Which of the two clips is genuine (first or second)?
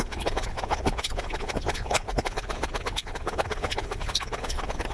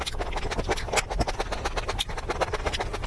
second